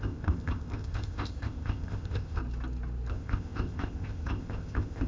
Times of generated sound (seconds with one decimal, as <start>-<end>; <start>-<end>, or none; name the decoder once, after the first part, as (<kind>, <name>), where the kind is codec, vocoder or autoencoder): 0.0-2.4 (codec, ZipCodec); 3.1-5.1